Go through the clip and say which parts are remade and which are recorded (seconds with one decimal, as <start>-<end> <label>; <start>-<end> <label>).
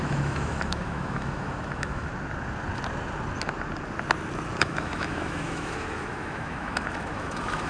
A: 0.0-2.1 remade; 2.1-4.6 recorded; 4.6-7.7 remade